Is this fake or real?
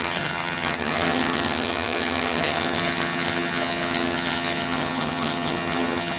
fake